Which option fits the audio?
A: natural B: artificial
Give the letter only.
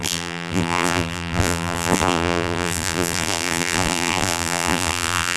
B